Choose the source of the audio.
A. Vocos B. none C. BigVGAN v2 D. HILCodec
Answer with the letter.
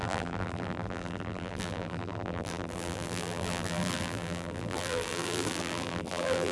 C